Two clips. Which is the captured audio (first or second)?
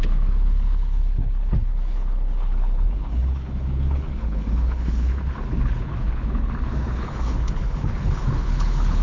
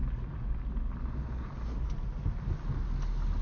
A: second